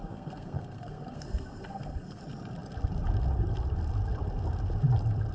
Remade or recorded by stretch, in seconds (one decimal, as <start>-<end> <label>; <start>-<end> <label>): 0.0-2.2 remade; 2.2-5.3 recorded